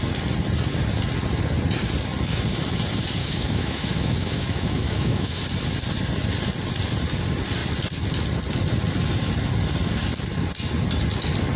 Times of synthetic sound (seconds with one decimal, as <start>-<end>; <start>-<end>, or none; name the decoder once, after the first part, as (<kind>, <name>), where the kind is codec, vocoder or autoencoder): 3.2-5.4 (autoencoder, DAC-VAE)